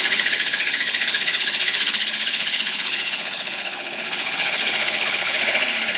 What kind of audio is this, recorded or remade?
remade